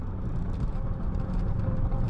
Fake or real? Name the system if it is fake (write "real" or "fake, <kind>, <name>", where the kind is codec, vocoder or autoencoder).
fake, vocoder, BigVGAN v2